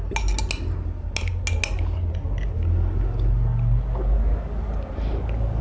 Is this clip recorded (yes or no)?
yes